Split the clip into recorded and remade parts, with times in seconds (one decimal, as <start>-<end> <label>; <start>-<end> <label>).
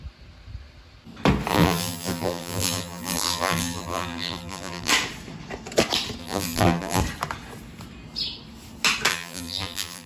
0.0-1.5 recorded; 1.5-4.9 remade; 4.9-6.2 recorded; 6.2-7.0 remade; 7.0-9.1 recorded; 9.1-10.1 remade